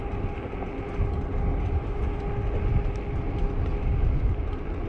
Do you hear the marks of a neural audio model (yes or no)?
no